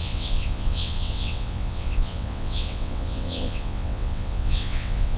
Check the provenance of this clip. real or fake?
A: fake